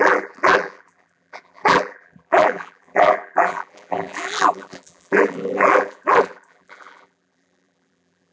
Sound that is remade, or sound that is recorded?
remade